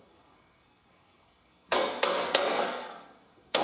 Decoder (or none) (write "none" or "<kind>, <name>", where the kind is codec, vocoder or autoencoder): codec, SNAC